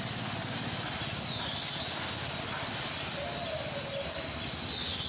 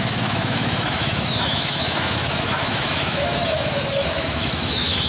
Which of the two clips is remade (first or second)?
second